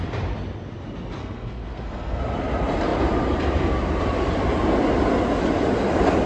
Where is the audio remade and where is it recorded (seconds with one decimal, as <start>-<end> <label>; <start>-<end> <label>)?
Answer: 0.0-1.2 recorded; 1.2-2.2 remade; 2.2-6.3 recorded